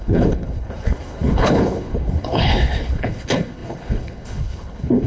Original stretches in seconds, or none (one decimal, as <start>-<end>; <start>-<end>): none

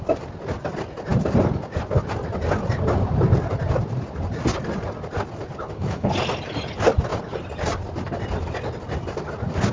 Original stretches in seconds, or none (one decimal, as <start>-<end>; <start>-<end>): 0.0-5.6; 6.1-9.7

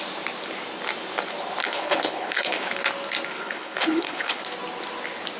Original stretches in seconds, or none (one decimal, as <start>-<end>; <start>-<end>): 0.0-1.6; 2.8-3.3; 4.4-5.4

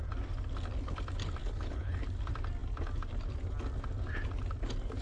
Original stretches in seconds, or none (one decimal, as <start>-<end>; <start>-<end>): 0.0-1.4; 2.0-5.0

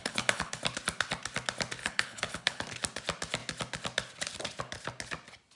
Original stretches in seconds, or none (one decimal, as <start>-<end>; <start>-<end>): 0.6-1.8; 2.6-5.6

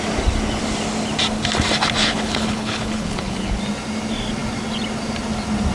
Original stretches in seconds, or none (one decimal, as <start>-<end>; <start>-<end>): 0.0-2.0; 3.6-5.7

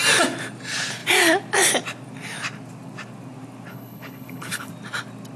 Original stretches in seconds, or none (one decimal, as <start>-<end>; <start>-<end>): 0.0-3.7; 4.7-5.4

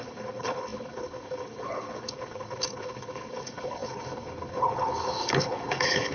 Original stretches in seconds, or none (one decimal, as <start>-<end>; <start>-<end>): none